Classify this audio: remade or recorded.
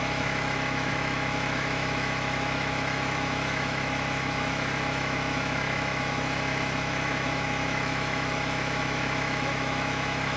remade